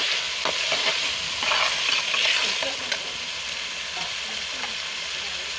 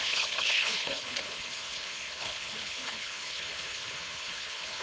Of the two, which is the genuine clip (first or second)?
first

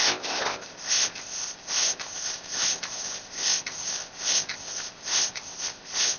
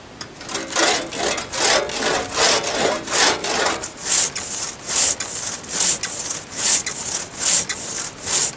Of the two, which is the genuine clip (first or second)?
second